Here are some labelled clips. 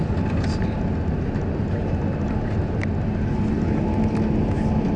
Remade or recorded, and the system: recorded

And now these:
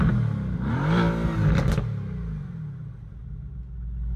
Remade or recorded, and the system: recorded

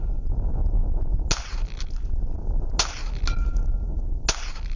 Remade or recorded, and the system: recorded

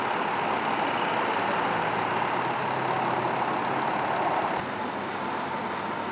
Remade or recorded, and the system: recorded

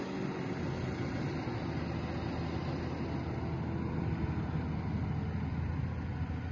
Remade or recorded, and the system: recorded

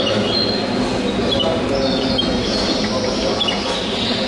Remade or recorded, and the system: recorded